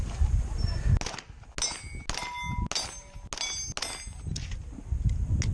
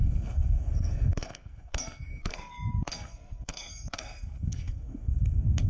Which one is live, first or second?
first